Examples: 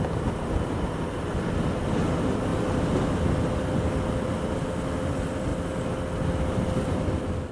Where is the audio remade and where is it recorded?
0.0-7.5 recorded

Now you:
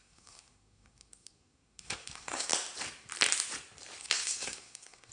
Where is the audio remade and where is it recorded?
0.0-2.5 remade; 2.5-4.0 recorded; 4.0-5.1 remade

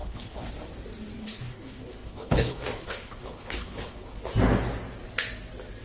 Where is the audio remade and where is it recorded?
0.0-0.5 remade; 0.5-1.2 recorded; 1.2-4.2 remade; 4.2-5.8 recorded

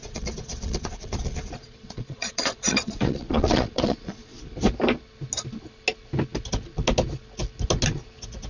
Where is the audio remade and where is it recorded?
0.0-4.4 remade; 4.4-8.5 recorded

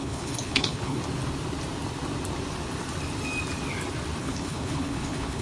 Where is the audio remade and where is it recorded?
0.0-1.0 remade; 1.0-4.2 recorded; 4.2-5.4 remade

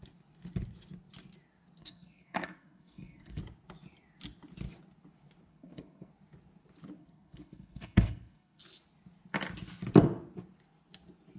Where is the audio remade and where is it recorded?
0.0-1.8 recorded; 1.8-3.4 remade; 3.4-5.5 recorded; 5.5-6.1 remade; 6.1-7.0 recorded; 7.0-8.6 remade; 8.6-11.4 recorded

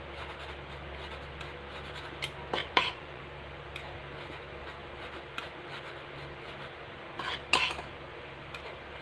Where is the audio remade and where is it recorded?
0.0-2.6 recorded; 2.6-3.2 remade; 3.2-9.0 recorded

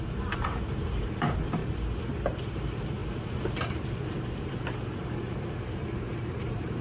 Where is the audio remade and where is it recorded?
0.0-1.6 remade; 1.6-2.3 recorded; 2.3-3.0 remade; 3.0-3.6 recorded; 3.6-6.8 remade